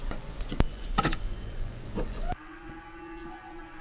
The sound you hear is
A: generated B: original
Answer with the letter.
A